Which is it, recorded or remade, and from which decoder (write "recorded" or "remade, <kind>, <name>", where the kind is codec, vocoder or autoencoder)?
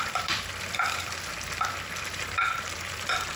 remade, vocoder, BigVGAN v2